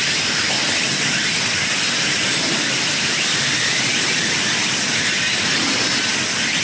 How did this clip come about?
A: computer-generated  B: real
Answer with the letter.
B